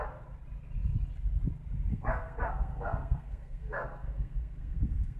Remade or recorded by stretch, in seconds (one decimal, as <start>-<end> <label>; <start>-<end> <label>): 0.0-1.9 recorded; 1.9-5.2 remade